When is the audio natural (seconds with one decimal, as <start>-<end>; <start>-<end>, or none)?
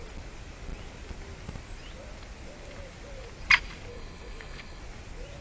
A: 0.0-3.9; 4.8-5.4